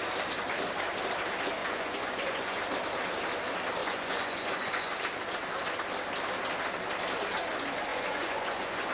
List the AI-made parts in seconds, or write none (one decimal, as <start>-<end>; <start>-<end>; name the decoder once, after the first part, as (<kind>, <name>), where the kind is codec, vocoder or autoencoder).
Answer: 1.6-2.6 (vocoder, Vocos); 3.8-4.9; 7.9-8.9